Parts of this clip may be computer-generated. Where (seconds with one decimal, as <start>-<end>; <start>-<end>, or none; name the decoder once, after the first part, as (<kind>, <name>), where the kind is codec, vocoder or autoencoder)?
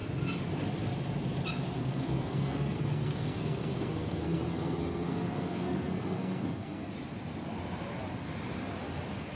1.8-6.9 (codec, SNAC)